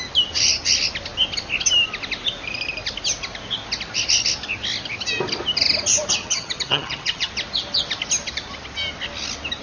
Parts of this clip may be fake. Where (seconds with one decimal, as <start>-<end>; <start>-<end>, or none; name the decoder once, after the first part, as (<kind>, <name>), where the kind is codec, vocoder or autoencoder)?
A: 6.2-7.3 (vocoder, HiFi-GAN)